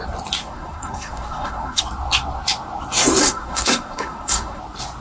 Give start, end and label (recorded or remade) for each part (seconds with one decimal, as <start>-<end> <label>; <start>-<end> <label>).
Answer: 0.0-0.4 recorded; 0.4-1.8 remade; 1.8-3.2 recorded; 3.2-4.6 remade; 4.6-5.0 recorded